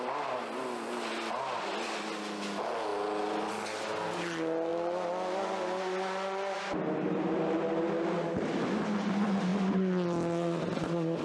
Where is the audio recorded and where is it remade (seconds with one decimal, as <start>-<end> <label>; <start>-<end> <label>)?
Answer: 0.0-11.2 recorded